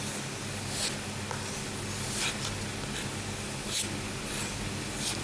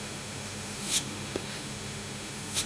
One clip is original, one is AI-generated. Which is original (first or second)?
first